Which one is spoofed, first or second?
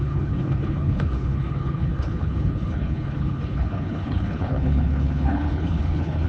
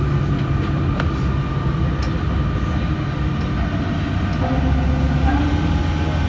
first